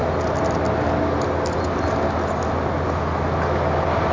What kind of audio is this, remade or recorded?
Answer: recorded